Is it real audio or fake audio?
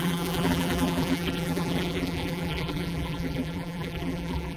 fake